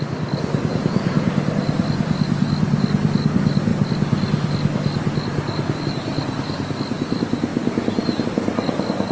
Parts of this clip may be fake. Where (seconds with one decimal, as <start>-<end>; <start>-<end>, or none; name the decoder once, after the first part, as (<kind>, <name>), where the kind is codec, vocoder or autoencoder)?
none